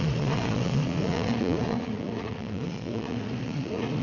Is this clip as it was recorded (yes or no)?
no